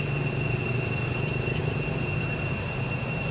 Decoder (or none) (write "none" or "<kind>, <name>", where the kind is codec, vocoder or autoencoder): none